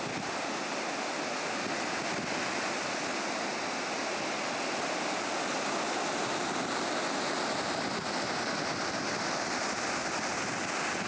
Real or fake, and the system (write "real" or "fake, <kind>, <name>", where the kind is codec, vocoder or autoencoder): real